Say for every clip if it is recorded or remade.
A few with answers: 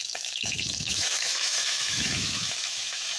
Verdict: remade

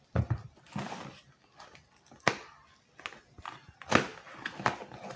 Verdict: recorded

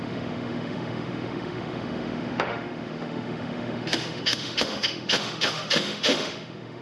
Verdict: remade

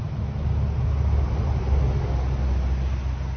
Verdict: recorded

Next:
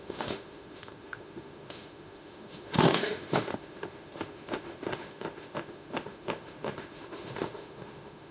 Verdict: remade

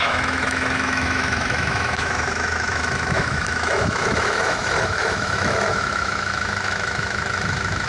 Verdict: remade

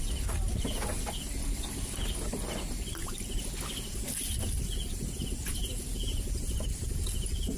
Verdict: recorded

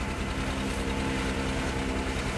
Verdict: recorded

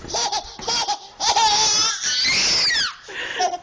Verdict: recorded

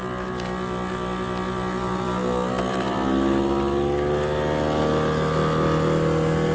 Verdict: recorded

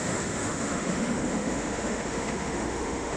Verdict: remade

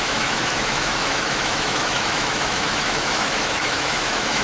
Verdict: remade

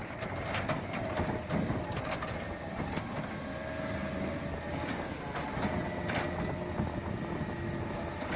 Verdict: recorded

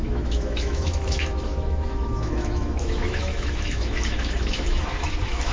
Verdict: remade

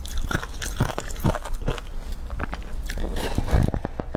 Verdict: recorded